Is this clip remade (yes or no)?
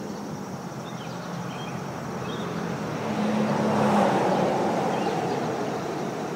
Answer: no